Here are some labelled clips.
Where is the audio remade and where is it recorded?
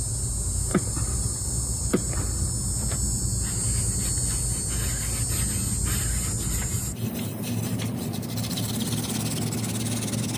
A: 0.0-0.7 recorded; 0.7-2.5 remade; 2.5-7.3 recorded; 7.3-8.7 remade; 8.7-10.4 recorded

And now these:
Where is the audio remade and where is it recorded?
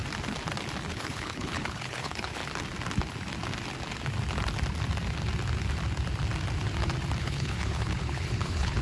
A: 0.0-0.9 recorded; 0.9-2.4 remade; 2.4-7.2 recorded; 7.2-8.8 remade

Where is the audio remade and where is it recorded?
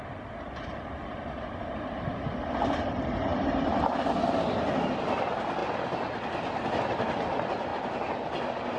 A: 0.0-8.8 recorded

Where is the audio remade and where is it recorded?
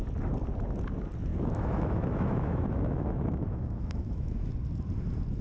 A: 0.0-1.3 recorded; 1.3-4.5 remade; 4.5-5.4 recorded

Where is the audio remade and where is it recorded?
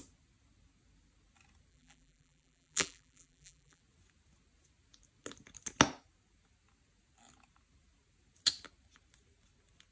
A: 0.0-1.7 recorded; 1.7-3.8 remade; 3.8-9.9 recorded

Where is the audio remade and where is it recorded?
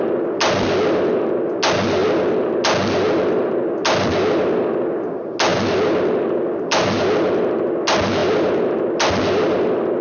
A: 0.0-5.5 recorded; 5.5-7.0 remade; 7.0-8.2 recorded; 8.2-9.1 remade; 9.1-10.0 recorded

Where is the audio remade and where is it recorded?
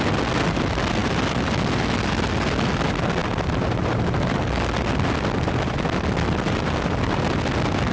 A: 0.0-7.9 recorded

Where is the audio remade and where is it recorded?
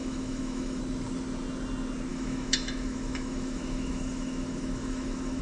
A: 0.0-0.8 remade; 0.8-2.1 recorded; 2.1-5.4 remade